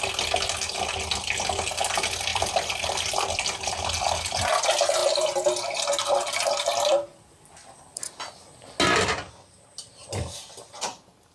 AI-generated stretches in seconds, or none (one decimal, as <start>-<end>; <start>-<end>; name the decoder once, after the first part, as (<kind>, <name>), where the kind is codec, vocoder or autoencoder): 2.3-3.8 (vocoder, BigVGAN v2)